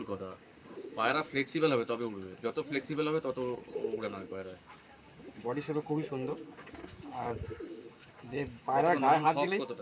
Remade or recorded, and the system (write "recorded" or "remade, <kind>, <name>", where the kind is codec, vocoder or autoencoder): remade, codec, DAC